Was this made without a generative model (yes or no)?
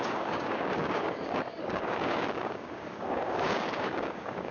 no